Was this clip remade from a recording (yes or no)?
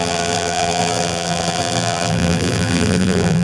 yes